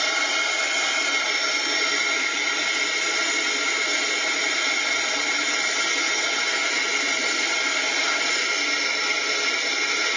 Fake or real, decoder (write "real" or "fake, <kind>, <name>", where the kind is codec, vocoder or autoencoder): real